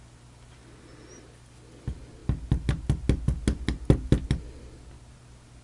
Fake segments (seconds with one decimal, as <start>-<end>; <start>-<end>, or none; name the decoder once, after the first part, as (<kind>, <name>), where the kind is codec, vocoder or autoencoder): none